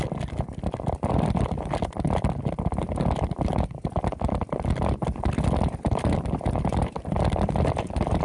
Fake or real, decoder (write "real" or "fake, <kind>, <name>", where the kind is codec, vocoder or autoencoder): real